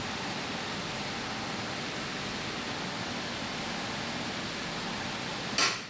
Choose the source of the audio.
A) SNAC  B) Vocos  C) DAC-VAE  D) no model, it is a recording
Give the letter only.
D